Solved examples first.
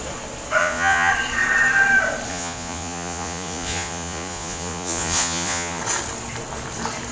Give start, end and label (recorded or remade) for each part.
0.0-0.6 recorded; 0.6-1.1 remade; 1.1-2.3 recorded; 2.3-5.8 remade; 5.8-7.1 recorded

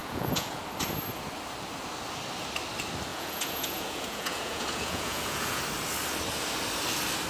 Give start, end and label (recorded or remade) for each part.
0.0-0.6 remade; 0.6-3.1 recorded; 3.1-5.6 remade; 5.6-7.3 recorded

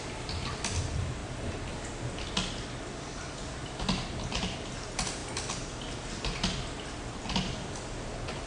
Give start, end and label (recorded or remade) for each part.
0.0-8.5 recorded

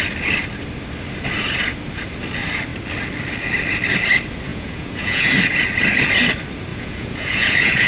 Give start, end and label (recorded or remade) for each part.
0.0-4.5 recorded; 4.5-5.3 remade; 5.3-6.7 recorded; 6.7-7.9 remade

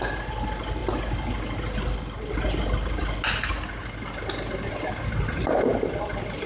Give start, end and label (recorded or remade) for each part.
0.0-6.5 recorded

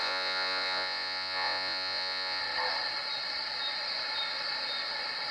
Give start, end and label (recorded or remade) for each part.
0.0-2.4 remade; 2.4-5.3 recorded